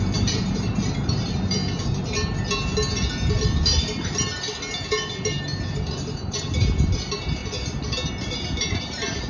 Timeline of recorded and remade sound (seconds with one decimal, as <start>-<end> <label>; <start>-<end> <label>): 0.0-1.6 remade; 1.6-5.3 recorded; 5.3-7.4 remade; 7.4-8.1 recorded; 8.1-9.3 remade